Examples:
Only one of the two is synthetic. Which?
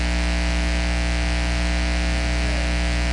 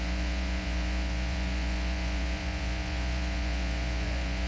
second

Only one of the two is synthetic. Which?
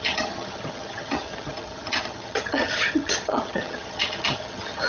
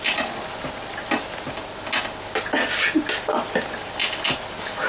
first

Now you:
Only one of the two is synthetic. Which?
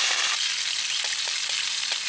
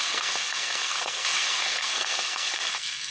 second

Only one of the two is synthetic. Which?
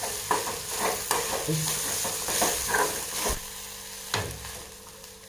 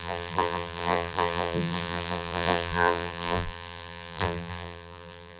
second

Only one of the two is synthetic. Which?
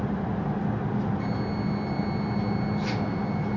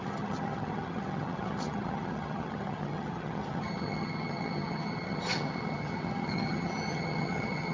second